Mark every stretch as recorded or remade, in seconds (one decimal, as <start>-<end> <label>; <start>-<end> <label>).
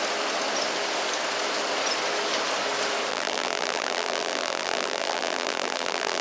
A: 0.0-3.1 recorded; 3.1-6.2 remade